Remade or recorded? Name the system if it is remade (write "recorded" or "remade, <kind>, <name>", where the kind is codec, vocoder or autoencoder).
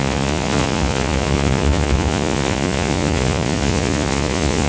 remade, vocoder, Vocos